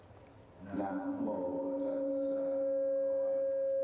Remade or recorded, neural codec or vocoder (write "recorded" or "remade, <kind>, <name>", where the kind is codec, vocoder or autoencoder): recorded